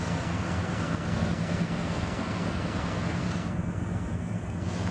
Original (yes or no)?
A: no